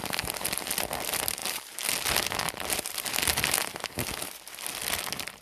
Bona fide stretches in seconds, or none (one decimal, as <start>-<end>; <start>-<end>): 0.0-5.4